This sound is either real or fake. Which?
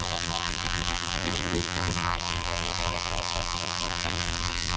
fake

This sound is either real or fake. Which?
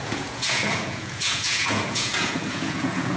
fake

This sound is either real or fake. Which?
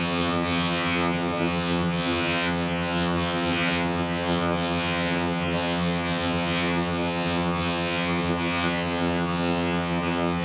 fake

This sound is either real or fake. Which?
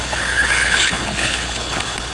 fake